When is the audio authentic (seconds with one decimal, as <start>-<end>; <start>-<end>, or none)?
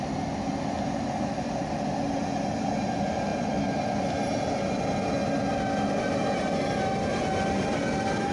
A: 0.0-8.3